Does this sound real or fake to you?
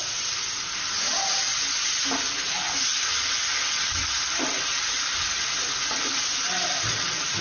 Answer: real